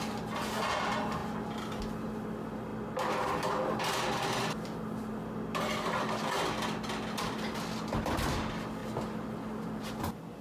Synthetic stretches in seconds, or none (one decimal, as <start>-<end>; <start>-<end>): none